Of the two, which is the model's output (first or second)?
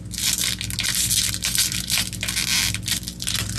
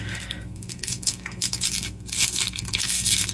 second